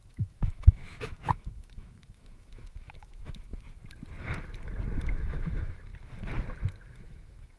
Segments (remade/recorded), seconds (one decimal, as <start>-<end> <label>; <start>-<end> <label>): 0.0-3.5 remade; 3.5-5.0 recorded; 5.0-5.9 remade; 5.9-6.9 recorded; 6.9-7.6 remade